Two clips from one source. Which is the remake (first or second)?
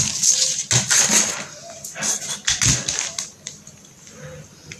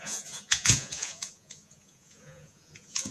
second